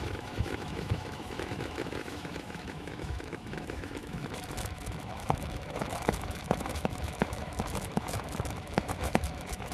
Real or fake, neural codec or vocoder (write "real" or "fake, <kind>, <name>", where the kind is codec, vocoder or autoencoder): fake, autoencoder, DAC-VAE